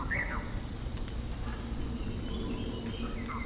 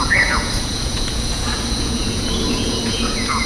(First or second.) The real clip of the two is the first